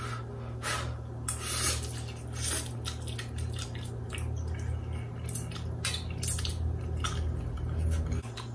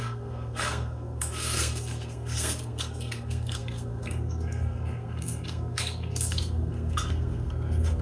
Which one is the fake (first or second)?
second